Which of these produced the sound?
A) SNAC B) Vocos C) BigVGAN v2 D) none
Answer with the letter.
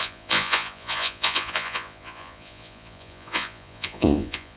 B